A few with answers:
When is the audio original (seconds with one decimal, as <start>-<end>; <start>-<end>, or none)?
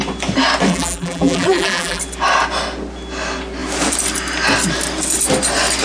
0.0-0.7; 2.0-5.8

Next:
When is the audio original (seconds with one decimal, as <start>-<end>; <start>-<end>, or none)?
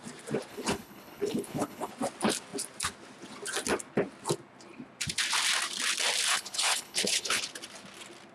0.0-0.5; 1.9-6.3; 7.4-8.3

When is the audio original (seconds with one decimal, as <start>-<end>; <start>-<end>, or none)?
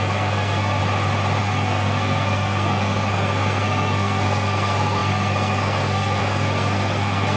0.8-1.4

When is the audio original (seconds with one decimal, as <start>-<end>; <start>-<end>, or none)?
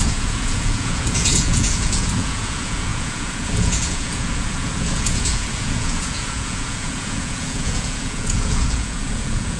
none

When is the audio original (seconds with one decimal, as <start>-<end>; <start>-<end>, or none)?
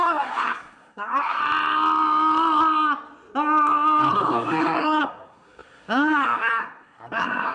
1.4-4.1